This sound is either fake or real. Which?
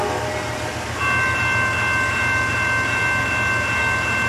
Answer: real